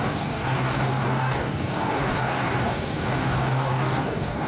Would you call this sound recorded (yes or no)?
no